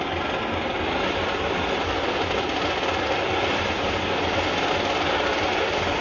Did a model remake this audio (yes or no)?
no